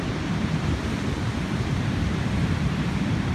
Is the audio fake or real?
fake